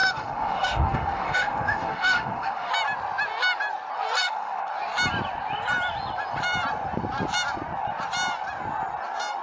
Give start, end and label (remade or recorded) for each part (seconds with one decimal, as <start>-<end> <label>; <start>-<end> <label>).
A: 0.0-2.7 remade; 2.7-4.2 recorded; 4.2-4.7 remade; 4.7-9.4 recorded